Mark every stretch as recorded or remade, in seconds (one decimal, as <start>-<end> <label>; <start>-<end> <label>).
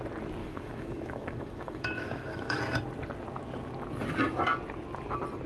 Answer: 0.0-0.4 recorded; 0.4-2.6 remade; 2.6-5.5 recorded